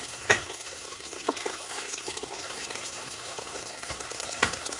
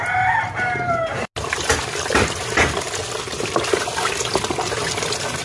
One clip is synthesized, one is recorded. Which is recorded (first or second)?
second